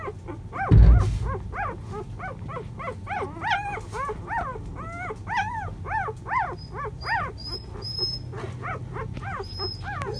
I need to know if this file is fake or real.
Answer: real